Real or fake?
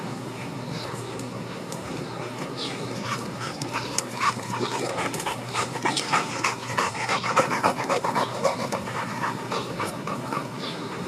fake